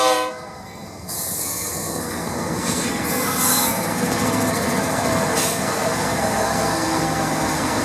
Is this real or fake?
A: fake